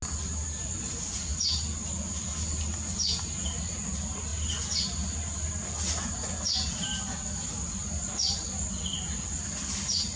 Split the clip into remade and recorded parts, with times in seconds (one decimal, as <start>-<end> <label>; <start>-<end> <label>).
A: 0.0-10.2 recorded